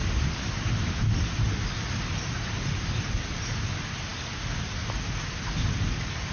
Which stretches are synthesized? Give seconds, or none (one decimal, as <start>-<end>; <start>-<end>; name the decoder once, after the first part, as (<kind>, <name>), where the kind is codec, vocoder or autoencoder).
none